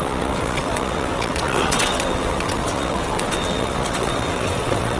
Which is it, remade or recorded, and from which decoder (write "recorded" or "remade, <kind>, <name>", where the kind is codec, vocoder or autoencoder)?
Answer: remade, vocoder, WaveNeXt